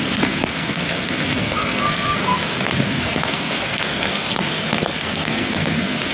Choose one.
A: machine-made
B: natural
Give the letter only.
A